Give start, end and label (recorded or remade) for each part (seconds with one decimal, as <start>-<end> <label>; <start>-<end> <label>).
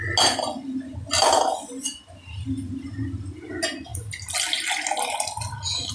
0.0-5.9 recorded